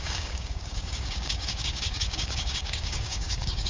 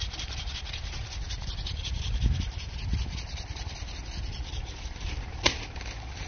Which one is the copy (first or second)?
first